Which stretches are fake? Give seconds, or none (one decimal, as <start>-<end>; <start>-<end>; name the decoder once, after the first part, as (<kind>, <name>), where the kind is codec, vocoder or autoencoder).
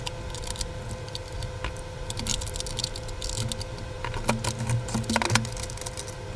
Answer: none